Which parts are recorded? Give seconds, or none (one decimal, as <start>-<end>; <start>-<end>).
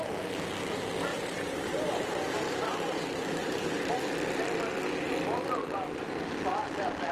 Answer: 0.0-1.1; 3.9-5.6; 6.2-7.1